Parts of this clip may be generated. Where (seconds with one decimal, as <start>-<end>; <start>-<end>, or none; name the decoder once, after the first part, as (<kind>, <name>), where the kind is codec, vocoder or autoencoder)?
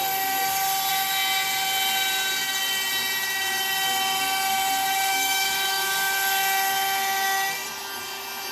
5.1-5.9 (autoencoder, DAC-VAE)